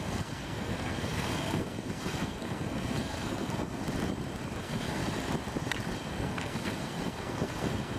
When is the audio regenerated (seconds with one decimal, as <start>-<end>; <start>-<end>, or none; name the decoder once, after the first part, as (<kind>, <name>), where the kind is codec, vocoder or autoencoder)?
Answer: 0.0-3.8 (codec, SNAC); 4.6-5.0; 6.1-8.0